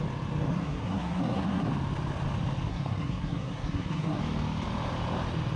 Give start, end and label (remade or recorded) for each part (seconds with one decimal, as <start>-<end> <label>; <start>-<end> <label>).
0.0-0.5 recorded; 0.5-1.7 remade; 1.7-2.7 recorded; 2.7-4.2 remade; 4.2-5.6 recorded